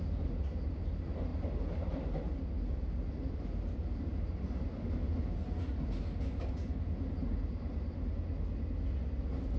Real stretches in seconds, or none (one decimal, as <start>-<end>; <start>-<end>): 0.0-9.6